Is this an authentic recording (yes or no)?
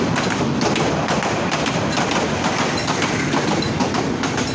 yes